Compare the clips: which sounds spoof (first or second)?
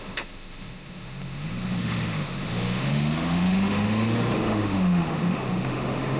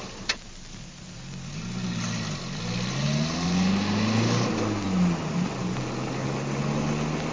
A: first